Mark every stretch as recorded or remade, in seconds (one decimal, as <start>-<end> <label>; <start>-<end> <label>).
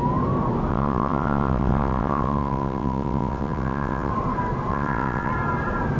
0.0-0.7 recorded; 0.7-4.1 remade; 4.1-4.7 recorded; 4.7-5.3 remade; 5.3-6.0 recorded